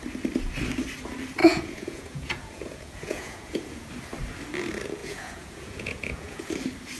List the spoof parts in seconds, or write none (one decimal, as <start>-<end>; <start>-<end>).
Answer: 1.4-3.9; 5.0-6.5